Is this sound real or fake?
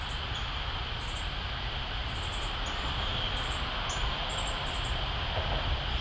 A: real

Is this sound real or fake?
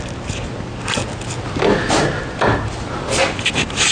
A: real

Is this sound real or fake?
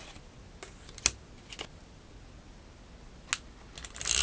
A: real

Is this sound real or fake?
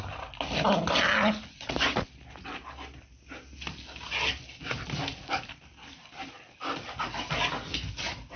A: real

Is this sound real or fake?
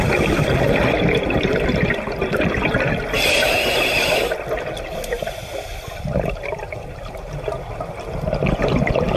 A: real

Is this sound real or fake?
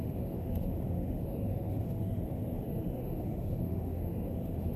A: fake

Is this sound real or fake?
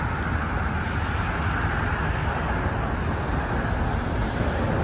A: real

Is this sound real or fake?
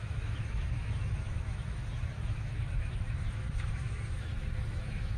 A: fake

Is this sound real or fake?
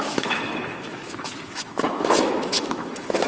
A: fake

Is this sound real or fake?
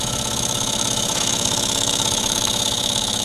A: fake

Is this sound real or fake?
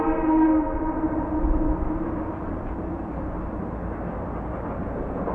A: real